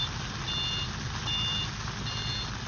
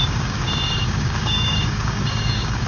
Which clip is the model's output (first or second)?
second